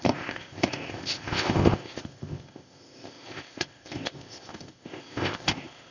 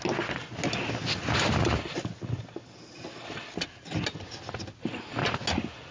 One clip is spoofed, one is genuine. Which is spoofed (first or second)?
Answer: first